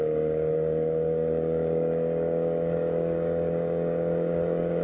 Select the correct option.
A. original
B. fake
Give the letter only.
B